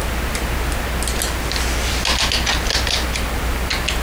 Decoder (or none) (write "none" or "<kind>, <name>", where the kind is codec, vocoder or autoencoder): none